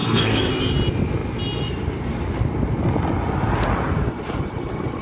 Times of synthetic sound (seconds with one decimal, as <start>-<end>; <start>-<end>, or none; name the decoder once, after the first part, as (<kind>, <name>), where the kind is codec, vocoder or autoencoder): 0.0-0.5 (codec, SNAC)